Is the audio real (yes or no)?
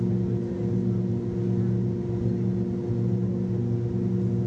yes